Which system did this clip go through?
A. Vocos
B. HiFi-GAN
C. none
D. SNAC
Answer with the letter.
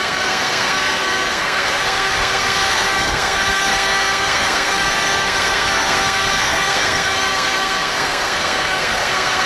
D